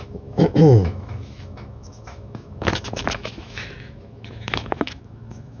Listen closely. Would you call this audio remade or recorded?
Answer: remade